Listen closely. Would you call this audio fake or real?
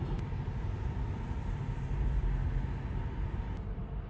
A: real